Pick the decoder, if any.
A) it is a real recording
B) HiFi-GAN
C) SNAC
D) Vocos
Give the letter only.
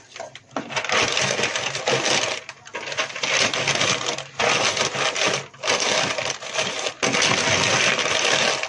A